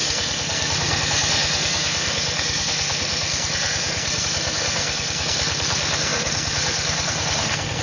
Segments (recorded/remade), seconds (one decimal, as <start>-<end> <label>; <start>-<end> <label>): 0.0-7.8 remade